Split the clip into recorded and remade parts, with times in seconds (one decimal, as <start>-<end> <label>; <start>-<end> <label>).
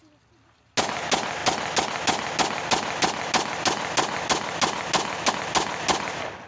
0.0-6.5 recorded